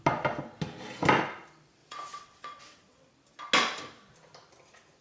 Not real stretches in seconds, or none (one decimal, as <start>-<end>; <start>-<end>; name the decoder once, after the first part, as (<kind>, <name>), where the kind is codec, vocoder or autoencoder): 1.8-3.1 (vocoder, WaveNeXt)